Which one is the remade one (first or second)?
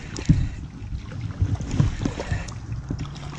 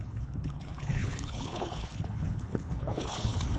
second